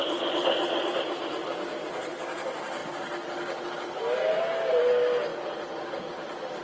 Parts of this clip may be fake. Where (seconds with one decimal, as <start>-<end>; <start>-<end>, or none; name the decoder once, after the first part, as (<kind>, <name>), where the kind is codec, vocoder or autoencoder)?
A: 0.0-1.4 (vocoder, BigVGAN v2); 1.9-2.8; 3.7-5.3; 5.9-6.6